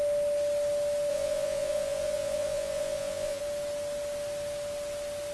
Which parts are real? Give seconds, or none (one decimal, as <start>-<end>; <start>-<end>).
0.0-1.1; 3.4-5.3